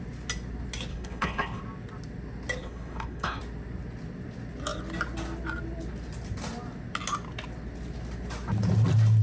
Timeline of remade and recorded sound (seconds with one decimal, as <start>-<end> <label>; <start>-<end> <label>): 0.0-0.9 recorded; 0.9-1.6 remade; 1.6-2.6 recorded; 2.6-3.4 remade; 3.4-9.2 recorded